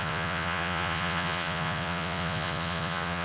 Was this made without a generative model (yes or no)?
no